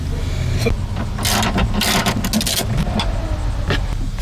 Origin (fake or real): real